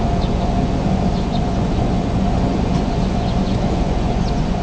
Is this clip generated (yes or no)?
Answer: yes